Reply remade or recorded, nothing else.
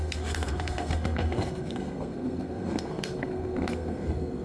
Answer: remade